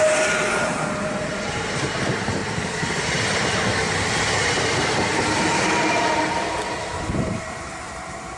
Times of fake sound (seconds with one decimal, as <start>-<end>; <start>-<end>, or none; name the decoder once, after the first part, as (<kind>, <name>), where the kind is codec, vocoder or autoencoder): 0.0-2.4 (vocoder, BigVGAN v2); 3.9-8.4